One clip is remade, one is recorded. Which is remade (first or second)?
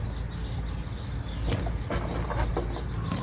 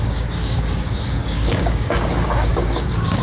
second